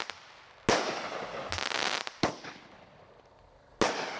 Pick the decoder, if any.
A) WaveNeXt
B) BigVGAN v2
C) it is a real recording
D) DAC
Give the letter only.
C